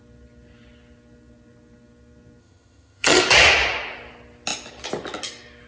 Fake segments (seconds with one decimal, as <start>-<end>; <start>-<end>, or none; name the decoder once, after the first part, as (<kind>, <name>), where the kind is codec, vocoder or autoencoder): 2.4-3.2 (vocoder, HiFi-GAN)